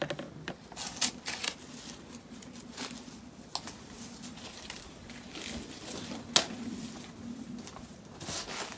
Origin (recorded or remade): recorded